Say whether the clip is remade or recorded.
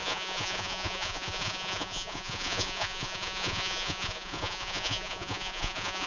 remade